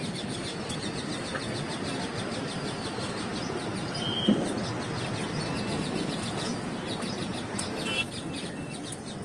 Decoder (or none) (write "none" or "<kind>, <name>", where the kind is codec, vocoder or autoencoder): none